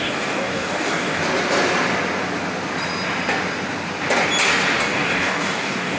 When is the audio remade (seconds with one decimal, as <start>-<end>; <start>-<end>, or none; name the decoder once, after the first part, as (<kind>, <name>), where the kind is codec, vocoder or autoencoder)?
0.0-1.2 (codec, DAC); 4.8-6.0